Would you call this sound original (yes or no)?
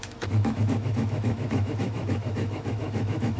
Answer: no